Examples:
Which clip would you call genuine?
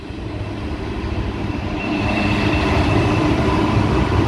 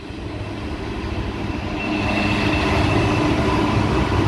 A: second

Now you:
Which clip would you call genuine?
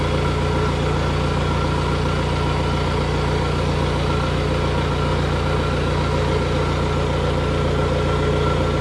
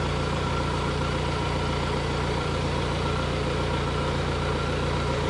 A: first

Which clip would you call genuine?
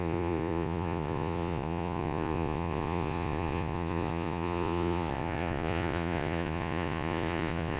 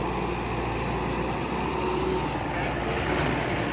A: second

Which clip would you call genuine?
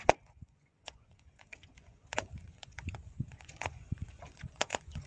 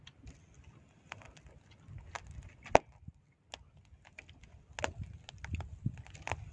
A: second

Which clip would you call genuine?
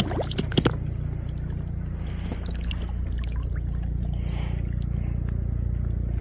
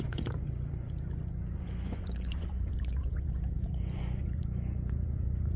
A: first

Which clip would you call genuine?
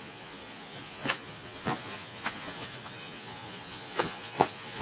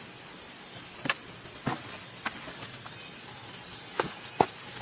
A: second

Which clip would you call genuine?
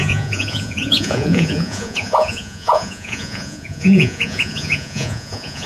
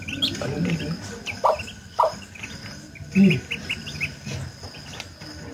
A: second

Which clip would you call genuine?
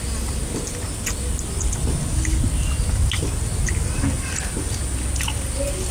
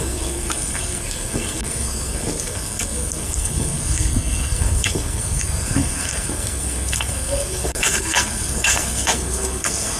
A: first